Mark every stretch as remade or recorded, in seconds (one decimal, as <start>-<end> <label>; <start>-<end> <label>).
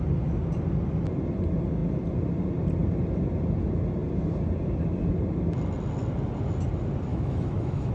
0.0-7.1 recorded; 7.1-7.9 remade